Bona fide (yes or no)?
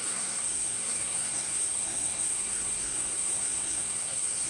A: no